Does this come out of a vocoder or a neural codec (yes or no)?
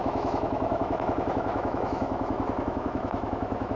yes